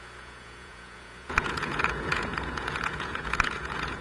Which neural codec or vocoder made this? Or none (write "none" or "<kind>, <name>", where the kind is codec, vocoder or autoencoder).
vocoder, Vocos